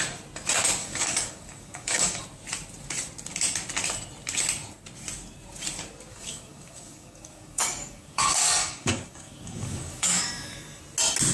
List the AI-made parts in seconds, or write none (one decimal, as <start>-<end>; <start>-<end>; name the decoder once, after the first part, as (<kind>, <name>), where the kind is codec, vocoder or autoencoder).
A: 0.8-2.2 (codec, DAC); 6.1-10.8